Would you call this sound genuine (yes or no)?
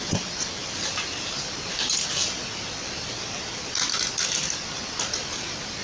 yes